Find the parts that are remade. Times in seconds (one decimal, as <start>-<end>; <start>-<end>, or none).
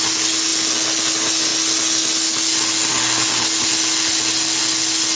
none